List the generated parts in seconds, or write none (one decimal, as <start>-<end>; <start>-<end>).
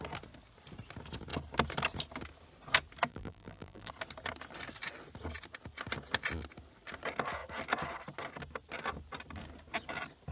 3.1-3.9